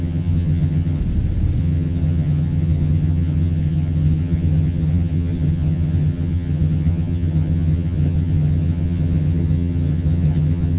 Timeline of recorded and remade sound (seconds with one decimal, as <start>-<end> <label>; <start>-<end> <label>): 0.0-1.0 remade; 1.0-1.6 recorded; 1.6-10.8 remade